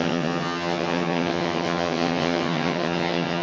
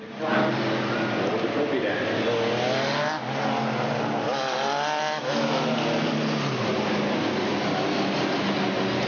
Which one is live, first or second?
second